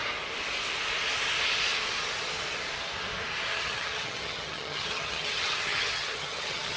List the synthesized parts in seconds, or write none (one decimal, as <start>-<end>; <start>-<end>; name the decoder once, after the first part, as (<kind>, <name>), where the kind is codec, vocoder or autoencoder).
3.5-6.8 (vocoder, HiFi-GAN)